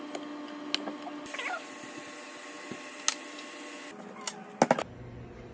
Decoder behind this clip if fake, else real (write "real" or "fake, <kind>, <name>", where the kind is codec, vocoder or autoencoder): real